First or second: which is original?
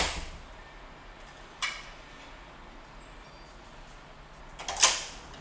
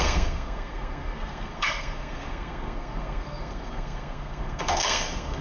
first